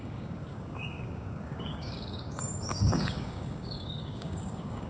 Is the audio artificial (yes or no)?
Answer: yes